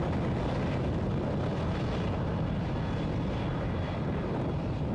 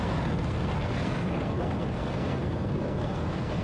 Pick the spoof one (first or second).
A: second